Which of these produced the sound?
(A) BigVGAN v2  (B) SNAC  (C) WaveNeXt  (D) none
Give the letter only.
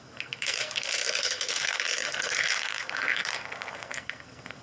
B